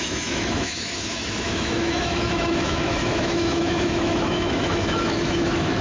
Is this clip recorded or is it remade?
remade